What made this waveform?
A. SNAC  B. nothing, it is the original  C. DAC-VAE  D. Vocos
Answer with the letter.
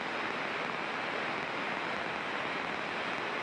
B